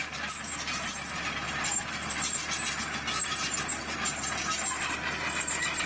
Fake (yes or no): no